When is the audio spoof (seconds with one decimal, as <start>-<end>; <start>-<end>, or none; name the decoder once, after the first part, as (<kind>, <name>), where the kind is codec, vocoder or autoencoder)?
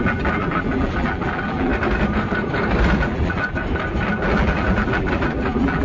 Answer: 0.0-1.7 (vocoder, BigVGAN v2); 3.0-3.6; 4.2-5.8